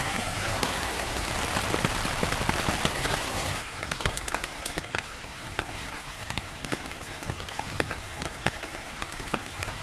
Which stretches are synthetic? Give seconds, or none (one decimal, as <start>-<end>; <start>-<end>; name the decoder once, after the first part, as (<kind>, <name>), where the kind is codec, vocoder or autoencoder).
0.0-1.3 (codec, SNAC); 2.9-9.8